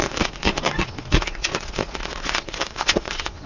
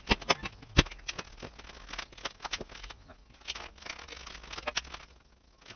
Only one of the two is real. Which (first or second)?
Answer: second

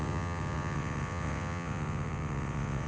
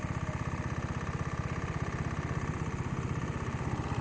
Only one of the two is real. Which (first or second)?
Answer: second